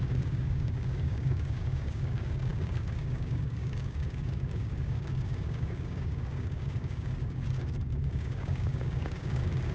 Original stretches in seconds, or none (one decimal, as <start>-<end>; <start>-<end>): none